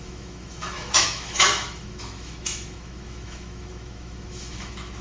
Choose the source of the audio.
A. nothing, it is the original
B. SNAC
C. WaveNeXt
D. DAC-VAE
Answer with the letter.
D